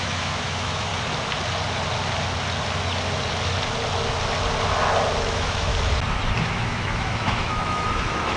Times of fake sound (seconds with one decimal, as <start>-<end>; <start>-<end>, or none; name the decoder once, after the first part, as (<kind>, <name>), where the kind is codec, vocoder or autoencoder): 0.0-0.9 (autoencoder, DAC-VAE); 5.2-5.7; 6.4-8.4